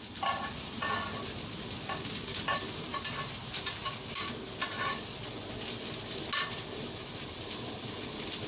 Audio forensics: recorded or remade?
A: recorded